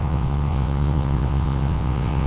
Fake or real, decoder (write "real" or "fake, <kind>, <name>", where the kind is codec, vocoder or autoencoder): fake, vocoder, WaveNeXt